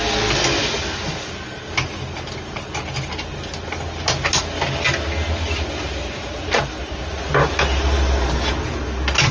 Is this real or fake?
real